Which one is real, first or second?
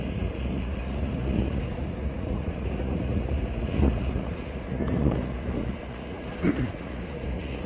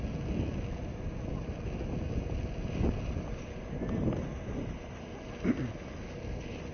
second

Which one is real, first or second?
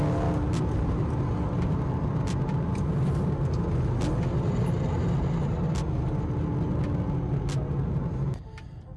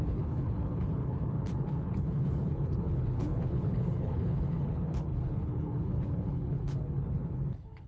first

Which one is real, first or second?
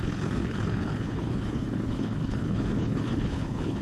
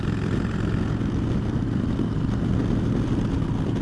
second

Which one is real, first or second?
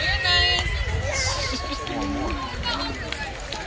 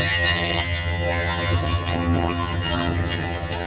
first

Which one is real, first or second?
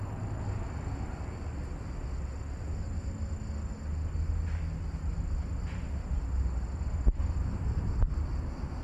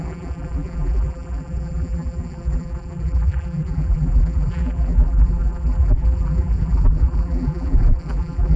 first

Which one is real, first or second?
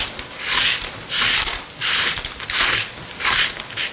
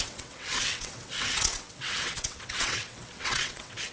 first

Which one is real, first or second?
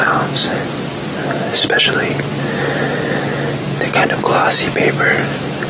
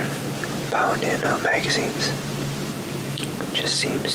first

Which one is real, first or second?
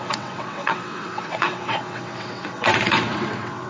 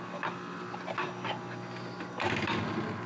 second